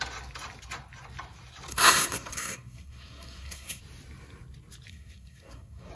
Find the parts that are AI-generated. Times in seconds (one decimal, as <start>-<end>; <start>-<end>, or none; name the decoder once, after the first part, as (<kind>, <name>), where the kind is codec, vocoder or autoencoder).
1.7-3.8 (codec, SNAC); 4.9-5.9